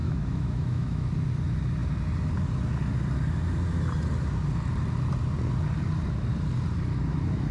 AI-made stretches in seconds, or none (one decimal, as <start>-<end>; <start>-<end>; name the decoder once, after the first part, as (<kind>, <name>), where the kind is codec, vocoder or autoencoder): 0.0-1.1 (autoencoder, DAC-VAE)